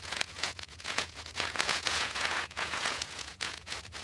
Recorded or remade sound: remade